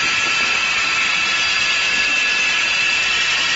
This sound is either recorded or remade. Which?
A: remade